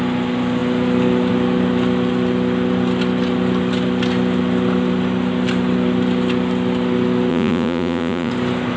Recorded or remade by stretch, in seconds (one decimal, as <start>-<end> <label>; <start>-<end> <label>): 0.0-7.3 recorded; 7.3-8.3 remade; 8.3-8.8 recorded